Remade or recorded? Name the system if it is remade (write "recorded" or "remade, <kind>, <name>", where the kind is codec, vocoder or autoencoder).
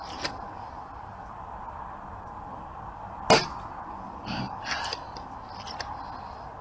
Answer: recorded